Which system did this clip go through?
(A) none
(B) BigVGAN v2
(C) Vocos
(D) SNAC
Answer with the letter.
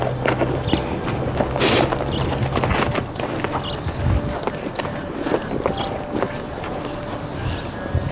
A